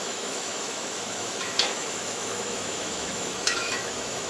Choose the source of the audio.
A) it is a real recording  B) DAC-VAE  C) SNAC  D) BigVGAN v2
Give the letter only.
B